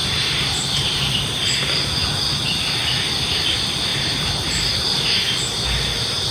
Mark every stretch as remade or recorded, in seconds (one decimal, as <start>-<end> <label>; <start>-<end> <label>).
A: 0.0-1.5 remade; 1.5-3.9 recorded; 3.9-4.7 remade; 4.7-6.3 recorded